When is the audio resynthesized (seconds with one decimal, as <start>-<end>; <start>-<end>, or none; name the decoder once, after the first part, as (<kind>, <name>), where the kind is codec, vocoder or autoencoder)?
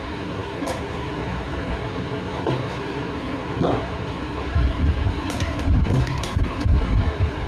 0.0-7.5 (codec, SNAC)